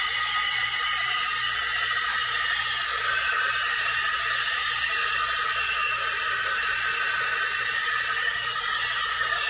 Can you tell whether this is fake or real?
real